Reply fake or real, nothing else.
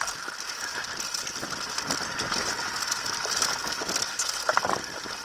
real